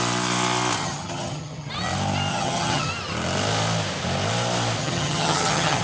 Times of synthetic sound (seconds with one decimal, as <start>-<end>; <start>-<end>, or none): 0.8-1.7; 2.3-2.9; 4.8-5.8